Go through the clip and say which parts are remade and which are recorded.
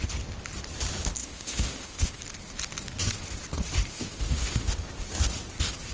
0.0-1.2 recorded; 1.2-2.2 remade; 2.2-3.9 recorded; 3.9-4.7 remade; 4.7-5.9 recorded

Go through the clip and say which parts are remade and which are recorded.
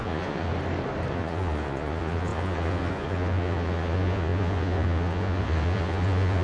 0.0-0.5 remade; 0.5-1.1 recorded; 1.1-6.4 remade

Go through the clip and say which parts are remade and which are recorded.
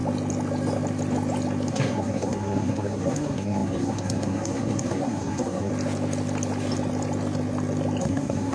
0.0-1.7 recorded; 1.7-5.7 remade; 5.7-8.0 recorded; 8.0-8.5 remade